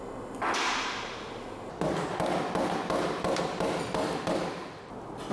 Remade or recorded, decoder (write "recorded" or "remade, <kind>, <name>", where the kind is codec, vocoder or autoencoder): recorded